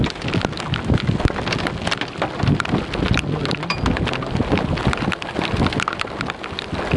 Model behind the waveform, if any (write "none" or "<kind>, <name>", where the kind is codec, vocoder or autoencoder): none